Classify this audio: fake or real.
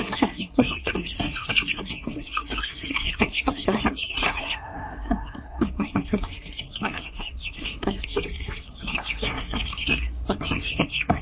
fake